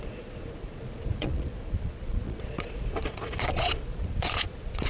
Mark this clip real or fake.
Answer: fake